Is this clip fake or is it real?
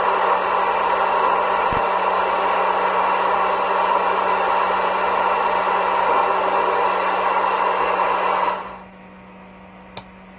real